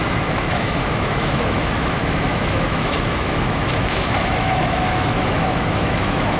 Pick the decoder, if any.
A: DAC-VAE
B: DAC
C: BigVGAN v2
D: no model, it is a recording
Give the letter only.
A